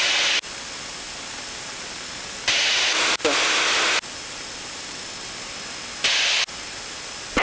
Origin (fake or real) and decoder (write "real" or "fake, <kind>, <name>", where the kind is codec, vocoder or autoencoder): real